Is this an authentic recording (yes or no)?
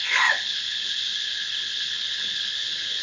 no